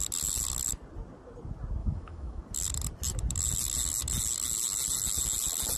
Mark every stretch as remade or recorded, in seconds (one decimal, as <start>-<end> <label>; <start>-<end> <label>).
0.0-1.8 recorded; 1.8-2.4 remade; 2.4-5.8 recorded

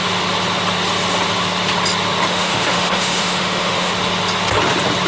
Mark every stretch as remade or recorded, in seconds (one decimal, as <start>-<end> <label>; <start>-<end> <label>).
0.0-2.3 recorded; 2.3-3.9 remade; 3.9-5.1 recorded

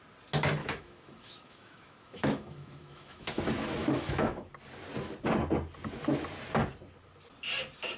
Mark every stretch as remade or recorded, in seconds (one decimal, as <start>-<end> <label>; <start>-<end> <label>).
0.0-0.6 recorded; 0.6-3.4 remade; 3.4-3.8 recorded; 3.8-4.5 remade; 4.5-8.0 recorded